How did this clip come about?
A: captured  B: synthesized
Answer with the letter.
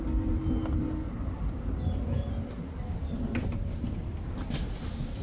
A